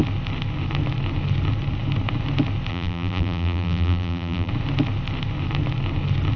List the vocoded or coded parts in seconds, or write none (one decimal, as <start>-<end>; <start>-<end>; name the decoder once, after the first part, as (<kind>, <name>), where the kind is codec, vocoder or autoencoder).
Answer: 2.7-4.5 (vocoder, BigVGAN v2)